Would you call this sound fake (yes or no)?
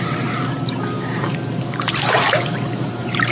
yes